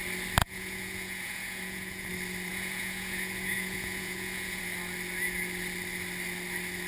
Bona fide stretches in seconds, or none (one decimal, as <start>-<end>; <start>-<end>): 0.0-0.4; 2.1-2.5; 4.6-6.9